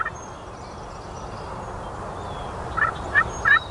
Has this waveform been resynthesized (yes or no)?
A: no